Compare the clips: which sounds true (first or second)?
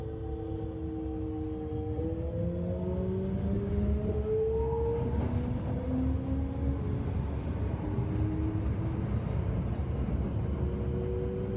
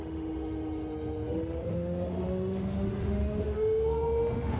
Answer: first